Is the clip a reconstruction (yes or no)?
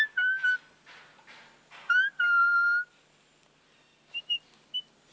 no